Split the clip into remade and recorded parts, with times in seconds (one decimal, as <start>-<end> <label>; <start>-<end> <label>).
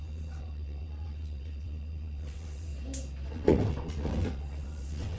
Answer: 0.0-2.7 remade; 2.7-3.3 recorded; 3.3-5.2 remade